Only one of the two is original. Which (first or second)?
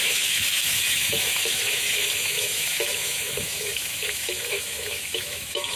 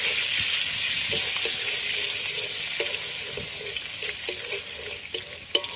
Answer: second